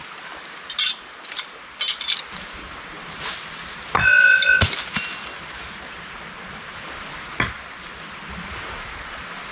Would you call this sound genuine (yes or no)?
yes